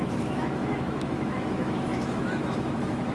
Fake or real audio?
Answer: fake